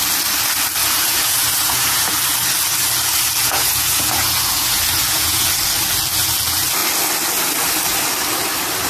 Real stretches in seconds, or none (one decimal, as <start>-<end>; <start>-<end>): 0.0-0.8; 2.1-3.4; 5.5-8.9